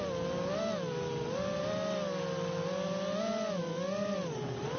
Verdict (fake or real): real